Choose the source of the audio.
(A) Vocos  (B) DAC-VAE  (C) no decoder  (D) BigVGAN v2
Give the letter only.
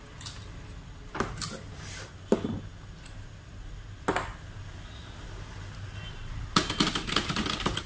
C